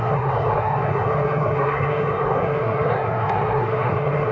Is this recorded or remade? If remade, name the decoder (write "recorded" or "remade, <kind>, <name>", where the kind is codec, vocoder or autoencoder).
remade, codec, SNAC